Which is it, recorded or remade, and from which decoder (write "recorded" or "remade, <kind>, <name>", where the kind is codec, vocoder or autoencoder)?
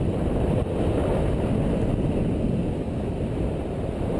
recorded